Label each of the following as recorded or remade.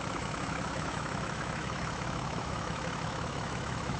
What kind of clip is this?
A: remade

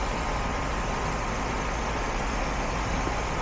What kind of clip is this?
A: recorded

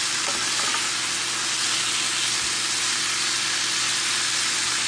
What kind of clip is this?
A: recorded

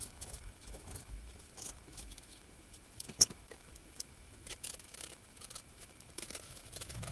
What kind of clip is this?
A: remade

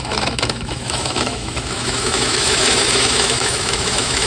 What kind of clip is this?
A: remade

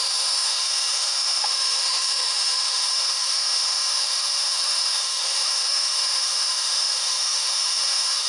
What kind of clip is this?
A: remade